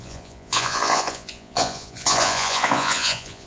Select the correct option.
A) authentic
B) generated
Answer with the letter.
B